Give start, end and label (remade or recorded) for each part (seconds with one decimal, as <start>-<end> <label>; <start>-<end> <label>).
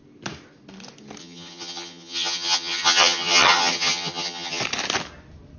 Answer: 0.0-1.2 recorded; 1.2-4.6 remade; 4.6-5.6 recorded